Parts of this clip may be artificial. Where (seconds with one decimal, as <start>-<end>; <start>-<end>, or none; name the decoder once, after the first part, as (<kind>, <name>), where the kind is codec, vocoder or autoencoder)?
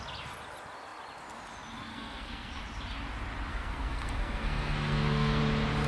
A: 1.9-2.6 (codec, SNAC); 3.5-5.4